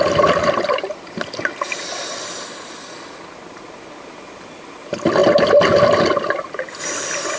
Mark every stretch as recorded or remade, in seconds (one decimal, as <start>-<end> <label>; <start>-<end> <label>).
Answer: 0.0-7.4 recorded